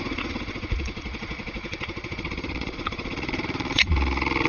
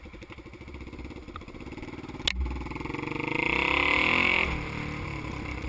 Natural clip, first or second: second